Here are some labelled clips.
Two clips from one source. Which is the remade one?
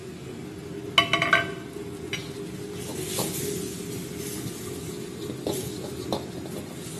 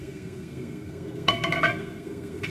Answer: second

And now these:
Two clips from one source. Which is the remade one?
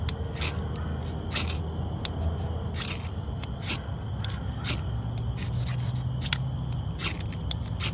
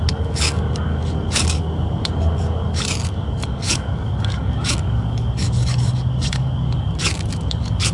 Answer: second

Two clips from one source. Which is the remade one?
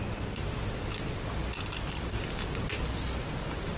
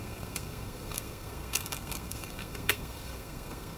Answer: second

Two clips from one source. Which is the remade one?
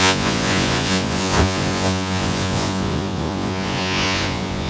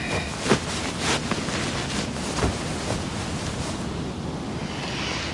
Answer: first